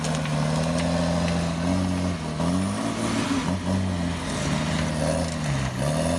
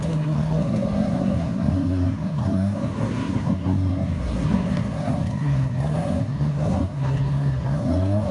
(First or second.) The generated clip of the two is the second